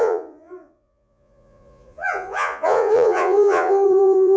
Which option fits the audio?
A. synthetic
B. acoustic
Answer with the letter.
A